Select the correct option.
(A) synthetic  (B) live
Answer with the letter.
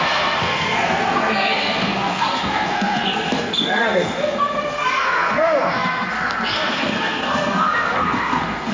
A